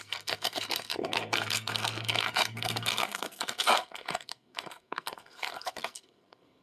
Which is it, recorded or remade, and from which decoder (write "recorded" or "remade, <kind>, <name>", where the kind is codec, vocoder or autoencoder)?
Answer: remade, codec, SNAC